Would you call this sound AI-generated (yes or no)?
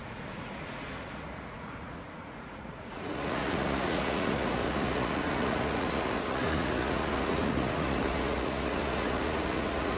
yes